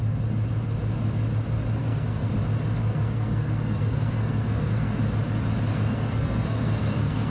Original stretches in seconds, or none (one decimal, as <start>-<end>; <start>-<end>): 0.0-1.8; 2.3-2.8; 5.0-5.7